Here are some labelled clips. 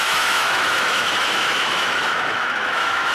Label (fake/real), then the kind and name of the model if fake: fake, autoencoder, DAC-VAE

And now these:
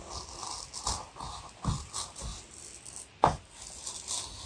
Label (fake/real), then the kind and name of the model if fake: real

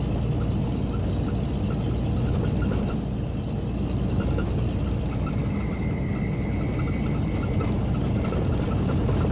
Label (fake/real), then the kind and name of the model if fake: real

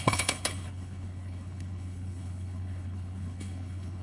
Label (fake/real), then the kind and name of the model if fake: fake, codec, HILCodec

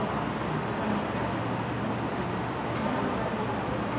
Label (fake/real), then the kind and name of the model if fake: real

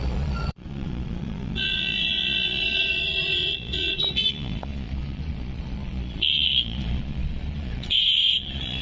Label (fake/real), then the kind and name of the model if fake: fake, vocoder, Vocos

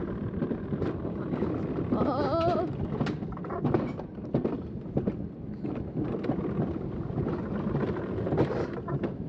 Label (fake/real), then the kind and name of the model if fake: real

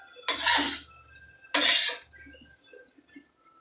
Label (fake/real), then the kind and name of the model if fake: real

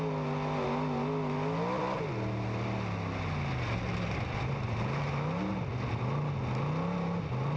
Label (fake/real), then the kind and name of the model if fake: real